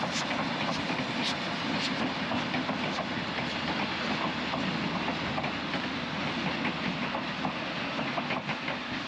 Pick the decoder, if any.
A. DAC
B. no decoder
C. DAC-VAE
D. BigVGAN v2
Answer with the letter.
B